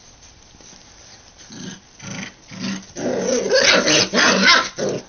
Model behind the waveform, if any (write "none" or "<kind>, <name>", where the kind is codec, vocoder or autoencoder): none